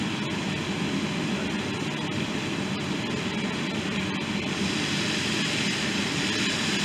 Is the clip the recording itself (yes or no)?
yes